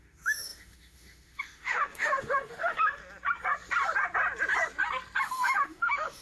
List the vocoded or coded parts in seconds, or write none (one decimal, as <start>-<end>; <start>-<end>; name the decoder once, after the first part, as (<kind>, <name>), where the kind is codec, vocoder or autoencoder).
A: 0.0-3.0 (autoencoder, DAC-VAE); 5.2-6.2